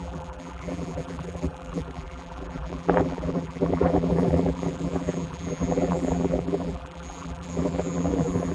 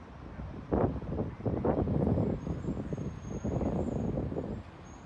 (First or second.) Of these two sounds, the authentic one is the second